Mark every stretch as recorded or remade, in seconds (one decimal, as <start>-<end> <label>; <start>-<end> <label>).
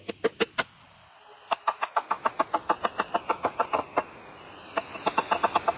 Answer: 0.0-5.8 recorded